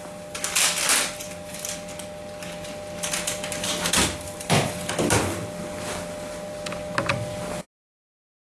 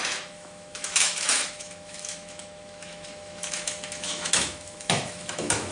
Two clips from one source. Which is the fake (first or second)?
second